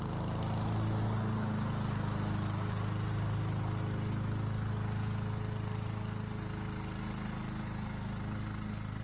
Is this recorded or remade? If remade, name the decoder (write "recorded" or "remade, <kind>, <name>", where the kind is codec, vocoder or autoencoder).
recorded